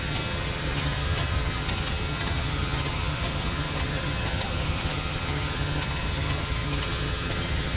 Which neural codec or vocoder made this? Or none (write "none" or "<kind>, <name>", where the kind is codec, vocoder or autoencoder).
vocoder, HiFi-GAN